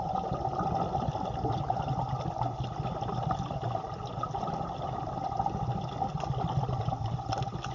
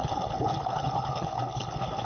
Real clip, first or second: first